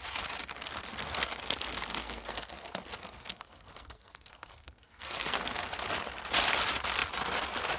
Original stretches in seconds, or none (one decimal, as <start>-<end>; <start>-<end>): 0.0-0.9; 1.4-2.0; 5.7-7.8